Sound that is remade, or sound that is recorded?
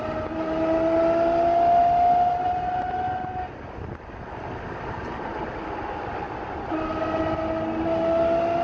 recorded